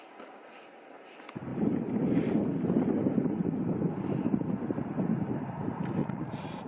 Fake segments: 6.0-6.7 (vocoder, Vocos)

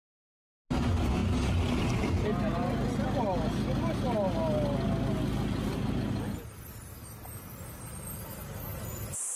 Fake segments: none